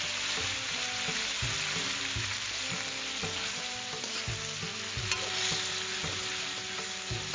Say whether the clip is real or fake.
real